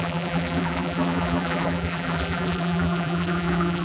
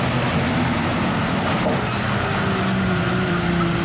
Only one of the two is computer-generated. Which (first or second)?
first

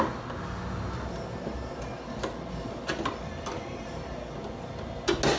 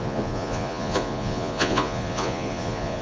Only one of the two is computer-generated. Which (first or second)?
second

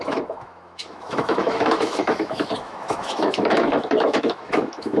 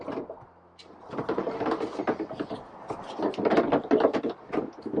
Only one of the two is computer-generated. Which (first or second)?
first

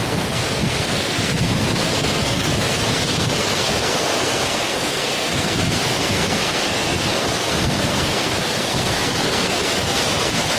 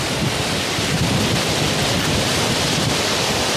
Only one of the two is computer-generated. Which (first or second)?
first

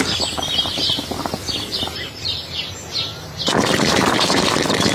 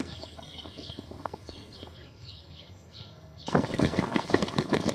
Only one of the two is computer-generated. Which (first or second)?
second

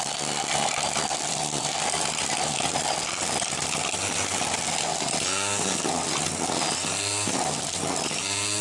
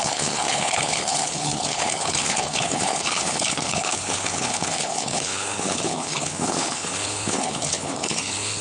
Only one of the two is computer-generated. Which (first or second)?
second